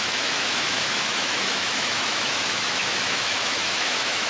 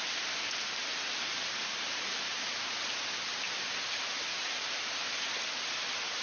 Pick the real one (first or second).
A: second